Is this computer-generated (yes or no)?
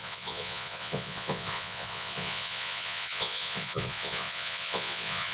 yes